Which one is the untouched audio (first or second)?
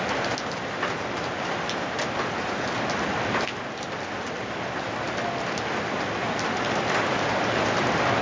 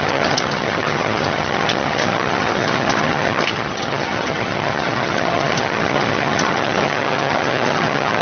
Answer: first